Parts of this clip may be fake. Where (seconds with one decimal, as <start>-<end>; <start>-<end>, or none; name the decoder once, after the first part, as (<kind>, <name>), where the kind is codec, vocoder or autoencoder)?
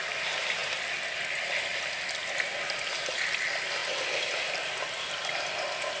none